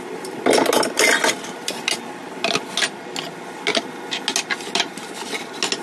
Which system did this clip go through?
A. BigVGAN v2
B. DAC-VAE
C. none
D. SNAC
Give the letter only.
C